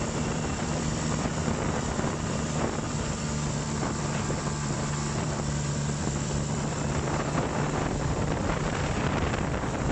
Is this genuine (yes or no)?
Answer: no